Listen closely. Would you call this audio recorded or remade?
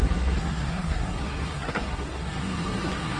remade